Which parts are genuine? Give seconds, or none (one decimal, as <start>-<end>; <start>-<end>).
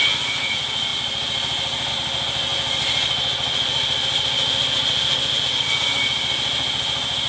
0.0-7.3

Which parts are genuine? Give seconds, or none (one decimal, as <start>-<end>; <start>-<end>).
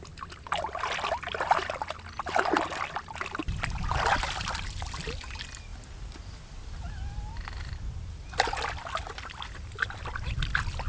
0.0-10.9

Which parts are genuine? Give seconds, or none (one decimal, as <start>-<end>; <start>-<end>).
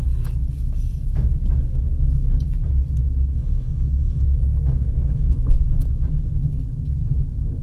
0.0-3.3; 5.5-7.6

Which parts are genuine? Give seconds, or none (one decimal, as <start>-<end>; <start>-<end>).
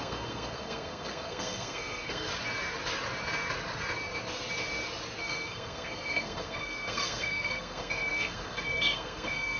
2.3-5.2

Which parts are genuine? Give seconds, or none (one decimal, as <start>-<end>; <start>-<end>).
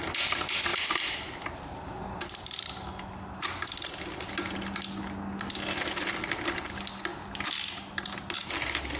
0.0-9.0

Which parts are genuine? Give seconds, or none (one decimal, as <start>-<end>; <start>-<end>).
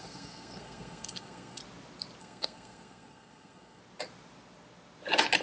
1.6-2.2; 3.8-5.4